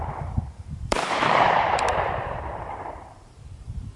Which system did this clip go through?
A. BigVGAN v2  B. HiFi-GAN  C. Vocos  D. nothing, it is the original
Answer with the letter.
A